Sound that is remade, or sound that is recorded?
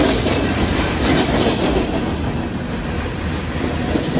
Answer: remade